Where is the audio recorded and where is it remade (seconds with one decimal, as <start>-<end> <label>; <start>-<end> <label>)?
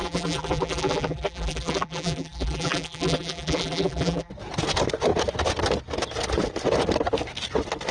0.0-4.3 remade; 4.3-7.9 recorded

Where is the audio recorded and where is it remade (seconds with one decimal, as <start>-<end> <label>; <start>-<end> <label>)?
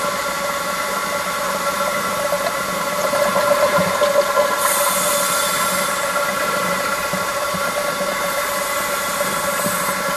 0.0-1.0 remade; 1.0-1.6 recorded; 1.6-4.1 remade; 4.1-5.5 recorded; 5.5-10.2 remade